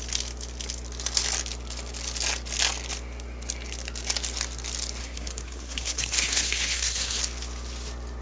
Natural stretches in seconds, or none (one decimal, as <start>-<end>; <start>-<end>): 0.0-5.0; 7.2-8.2